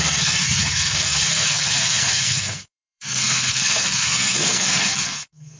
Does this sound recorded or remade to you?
remade